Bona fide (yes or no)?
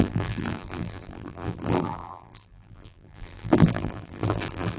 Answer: no